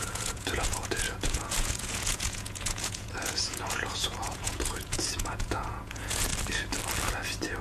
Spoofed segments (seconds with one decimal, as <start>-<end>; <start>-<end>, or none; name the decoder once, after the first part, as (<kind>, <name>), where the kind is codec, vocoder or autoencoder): 0.0-6.3 (vocoder, Vocos)